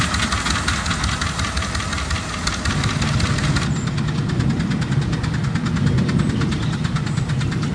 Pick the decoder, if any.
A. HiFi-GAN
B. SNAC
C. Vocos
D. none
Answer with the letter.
D